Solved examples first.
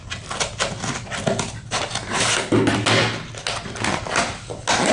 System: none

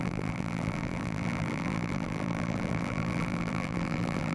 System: vocoder, BigVGAN v2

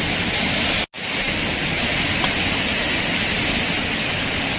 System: none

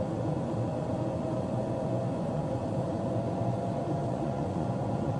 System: vocoder, Vocos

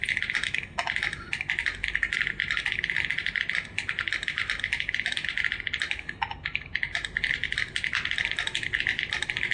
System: none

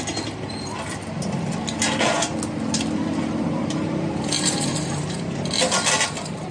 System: none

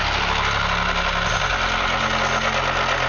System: none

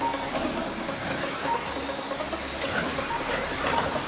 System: none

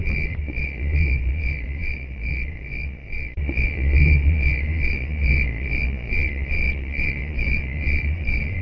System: vocoder, Vocos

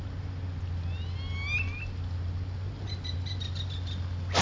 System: none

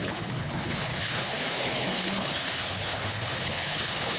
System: codec, HILCodec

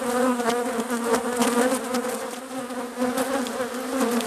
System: none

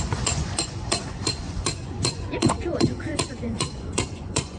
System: vocoder, Vocos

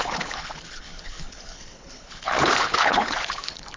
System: codec, HILCodec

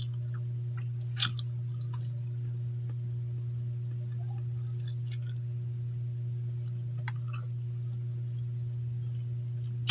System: none